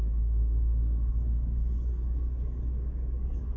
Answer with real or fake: fake